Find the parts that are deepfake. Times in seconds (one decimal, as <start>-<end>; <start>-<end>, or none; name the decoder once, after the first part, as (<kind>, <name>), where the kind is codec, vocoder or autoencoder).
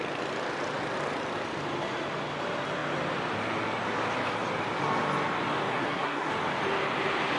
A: 5.7-6.3 (codec, SNAC)